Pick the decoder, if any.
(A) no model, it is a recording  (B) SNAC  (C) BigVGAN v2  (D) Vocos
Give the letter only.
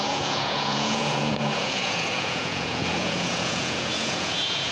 D